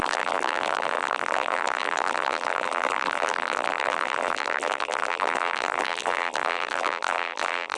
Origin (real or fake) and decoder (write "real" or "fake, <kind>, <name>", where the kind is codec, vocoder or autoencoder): fake, vocoder, BigVGAN v2